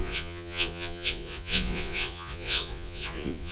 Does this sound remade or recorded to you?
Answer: remade